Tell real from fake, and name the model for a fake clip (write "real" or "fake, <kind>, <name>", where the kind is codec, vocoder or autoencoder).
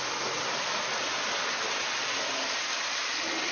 real